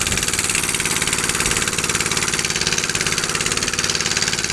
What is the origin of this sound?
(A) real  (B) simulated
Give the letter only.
A